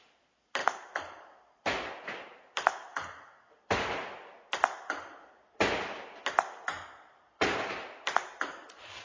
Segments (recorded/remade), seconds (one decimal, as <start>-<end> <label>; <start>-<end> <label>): 0.0-0.6 recorded; 0.6-1.9 remade; 1.9-9.0 recorded